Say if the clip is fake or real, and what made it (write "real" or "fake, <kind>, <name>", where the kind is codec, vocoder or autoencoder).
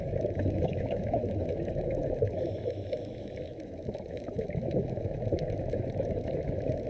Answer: fake, autoencoder, DAC-VAE